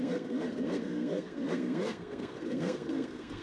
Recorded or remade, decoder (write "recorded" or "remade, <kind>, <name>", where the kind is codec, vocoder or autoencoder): remade, codec, SNAC